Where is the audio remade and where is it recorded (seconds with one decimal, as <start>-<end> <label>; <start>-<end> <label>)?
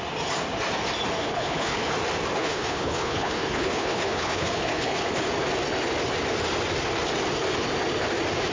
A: 0.0-1.2 recorded; 1.2-1.9 remade; 1.9-2.4 recorded; 2.4-5.2 remade; 5.2-8.5 recorded